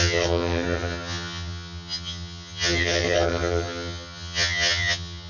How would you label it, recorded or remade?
remade